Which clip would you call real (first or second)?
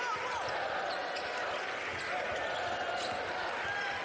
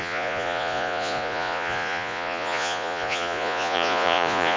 first